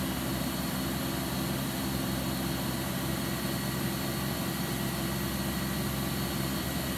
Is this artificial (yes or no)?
no